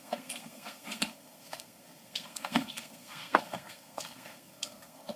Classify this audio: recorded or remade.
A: remade